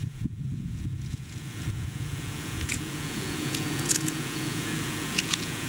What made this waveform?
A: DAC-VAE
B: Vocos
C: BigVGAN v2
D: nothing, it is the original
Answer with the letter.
B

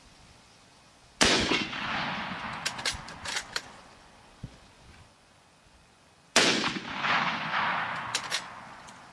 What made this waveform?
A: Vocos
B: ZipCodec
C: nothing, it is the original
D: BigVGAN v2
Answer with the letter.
A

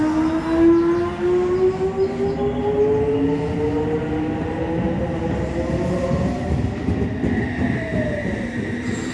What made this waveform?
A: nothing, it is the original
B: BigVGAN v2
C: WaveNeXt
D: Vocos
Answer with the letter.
A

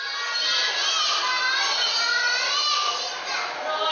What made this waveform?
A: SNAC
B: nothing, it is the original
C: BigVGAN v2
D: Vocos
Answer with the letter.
B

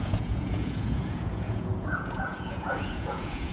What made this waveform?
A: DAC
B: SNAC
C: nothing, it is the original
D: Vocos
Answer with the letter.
D